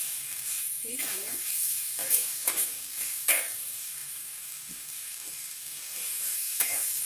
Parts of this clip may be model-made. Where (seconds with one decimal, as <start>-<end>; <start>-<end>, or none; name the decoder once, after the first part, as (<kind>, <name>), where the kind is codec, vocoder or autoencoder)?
0.0-7.1 (codec, DAC)